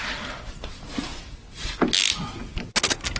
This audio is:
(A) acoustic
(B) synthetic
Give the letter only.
A